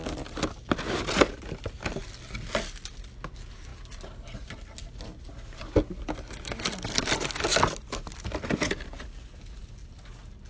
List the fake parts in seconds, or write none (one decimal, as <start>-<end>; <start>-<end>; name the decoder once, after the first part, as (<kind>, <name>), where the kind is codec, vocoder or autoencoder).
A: none